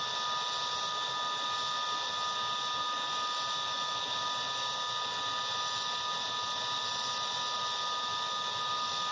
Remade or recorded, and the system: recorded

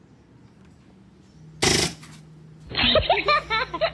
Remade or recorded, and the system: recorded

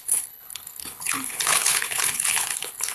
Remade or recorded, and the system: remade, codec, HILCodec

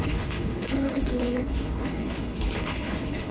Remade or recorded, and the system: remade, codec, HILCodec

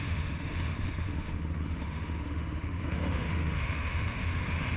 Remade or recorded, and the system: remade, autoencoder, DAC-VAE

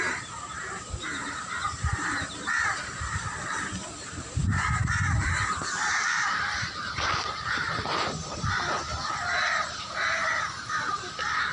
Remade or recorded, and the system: remade, vocoder, BigVGAN v2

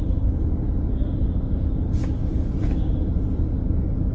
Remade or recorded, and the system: recorded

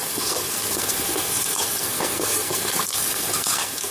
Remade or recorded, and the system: remade, codec, SNAC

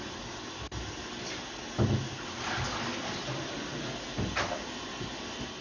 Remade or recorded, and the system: recorded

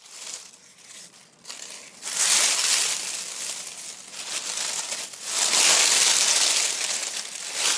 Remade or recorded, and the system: recorded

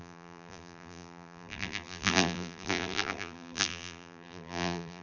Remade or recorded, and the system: remade, vocoder, BigVGAN v2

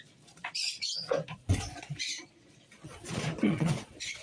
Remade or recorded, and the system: remade, vocoder, Vocos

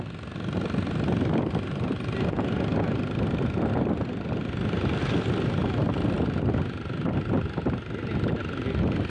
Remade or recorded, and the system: recorded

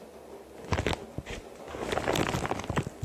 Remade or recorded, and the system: recorded